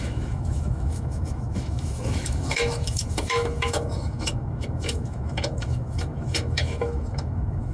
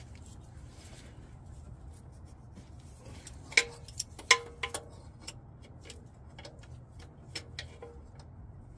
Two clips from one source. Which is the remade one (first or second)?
first